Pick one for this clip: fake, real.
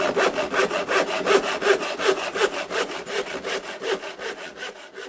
real